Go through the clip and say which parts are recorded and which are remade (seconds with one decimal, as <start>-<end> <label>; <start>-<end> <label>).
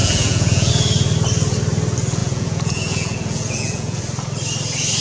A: 0.0-0.7 remade; 0.7-2.2 recorded; 2.2-4.0 remade; 4.0-5.0 recorded